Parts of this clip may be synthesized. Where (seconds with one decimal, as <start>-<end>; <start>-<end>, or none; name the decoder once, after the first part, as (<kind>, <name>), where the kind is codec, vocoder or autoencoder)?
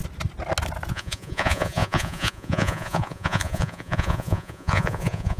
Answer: 0.9-5.4 (vocoder, Vocos)